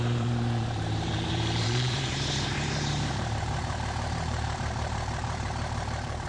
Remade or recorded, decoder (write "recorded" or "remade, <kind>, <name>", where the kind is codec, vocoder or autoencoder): remade, vocoder, BigVGAN v2